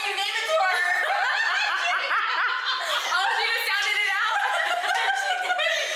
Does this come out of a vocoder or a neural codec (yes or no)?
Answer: yes